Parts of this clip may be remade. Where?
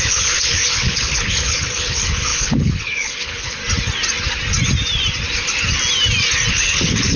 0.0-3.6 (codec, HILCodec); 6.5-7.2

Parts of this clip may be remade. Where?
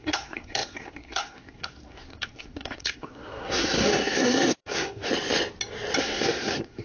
0.0-5.1 (codec, SNAC); 6.0-6.8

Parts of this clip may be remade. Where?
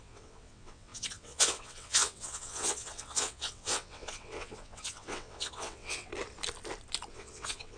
0.0-6.1 (vocoder, WaveNeXt); 7.1-7.8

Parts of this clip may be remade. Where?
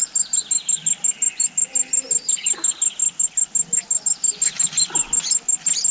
none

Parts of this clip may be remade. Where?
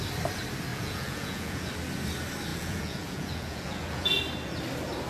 0.7-1.7 (vocoder, Vocos); 2.5-4.2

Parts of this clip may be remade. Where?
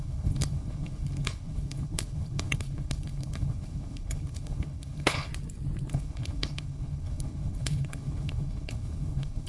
0.0-5.3 (codec, HILCodec); 5.9-9.5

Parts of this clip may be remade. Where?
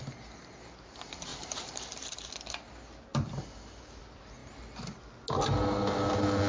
1.3-2.3 (vocoder, BigVGAN v2)